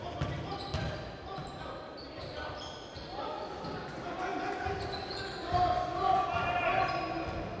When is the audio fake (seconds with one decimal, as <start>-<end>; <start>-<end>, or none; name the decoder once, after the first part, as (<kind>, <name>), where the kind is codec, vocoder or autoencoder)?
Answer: none